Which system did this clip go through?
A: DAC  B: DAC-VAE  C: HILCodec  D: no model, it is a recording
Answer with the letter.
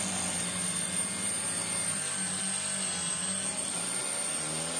D